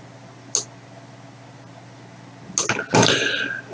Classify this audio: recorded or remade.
recorded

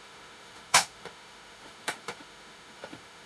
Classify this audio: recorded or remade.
remade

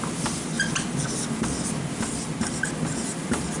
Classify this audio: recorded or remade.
recorded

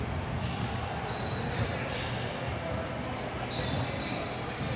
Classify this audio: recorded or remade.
recorded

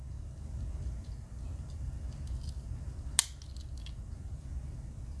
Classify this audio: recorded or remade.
recorded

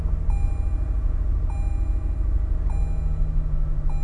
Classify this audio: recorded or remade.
recorded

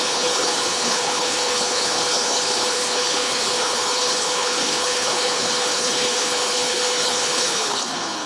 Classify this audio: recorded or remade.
remade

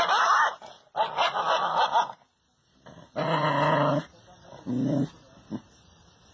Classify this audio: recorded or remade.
recorded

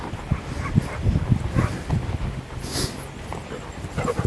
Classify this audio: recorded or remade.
recorded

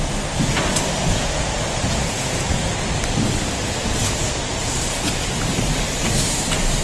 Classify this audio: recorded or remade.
recorded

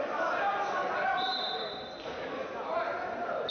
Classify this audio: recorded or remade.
recorded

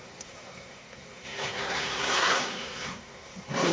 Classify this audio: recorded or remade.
remade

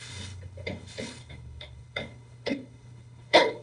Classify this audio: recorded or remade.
remade